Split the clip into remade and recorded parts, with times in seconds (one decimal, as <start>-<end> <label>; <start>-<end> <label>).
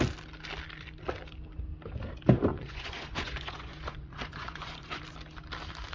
0.0-2.5 recorded; 2.5-5.0 remade; 5.0-5.9 recorded